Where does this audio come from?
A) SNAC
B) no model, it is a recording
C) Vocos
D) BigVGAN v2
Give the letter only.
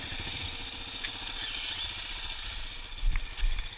B